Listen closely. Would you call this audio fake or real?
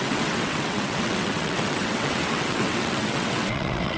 fake